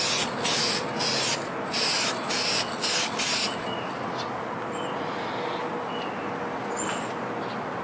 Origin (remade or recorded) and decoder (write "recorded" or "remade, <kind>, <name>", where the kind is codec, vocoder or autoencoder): recorded